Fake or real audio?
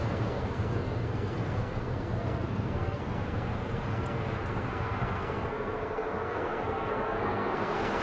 fake